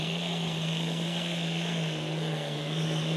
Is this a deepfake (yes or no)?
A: yes